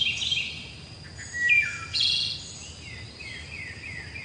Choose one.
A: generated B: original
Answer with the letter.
B